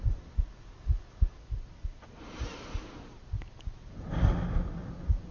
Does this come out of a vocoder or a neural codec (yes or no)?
no